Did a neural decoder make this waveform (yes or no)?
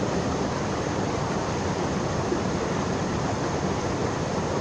no